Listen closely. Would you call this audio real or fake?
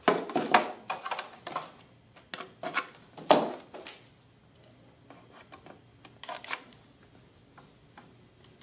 real